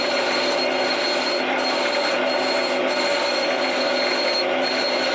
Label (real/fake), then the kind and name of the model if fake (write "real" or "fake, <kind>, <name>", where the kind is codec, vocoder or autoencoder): real